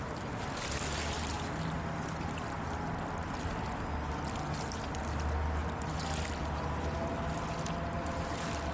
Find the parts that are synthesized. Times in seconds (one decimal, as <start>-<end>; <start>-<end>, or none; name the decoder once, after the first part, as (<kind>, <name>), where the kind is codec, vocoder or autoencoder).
none